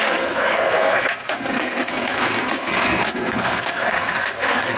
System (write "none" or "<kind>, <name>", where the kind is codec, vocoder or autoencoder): codec, SNAC